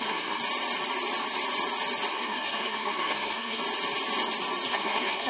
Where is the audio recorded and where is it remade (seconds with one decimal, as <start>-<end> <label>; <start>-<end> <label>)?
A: 0.0-0.4 remade; 0.4-2.1 recorded; 2.1-3.6 remade; 3.6-4.7 recorded; 4.7-5.3 remade